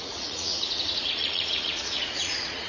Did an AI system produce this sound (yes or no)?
yes